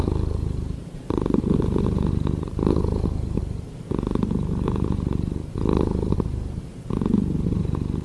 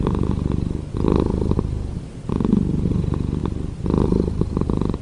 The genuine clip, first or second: second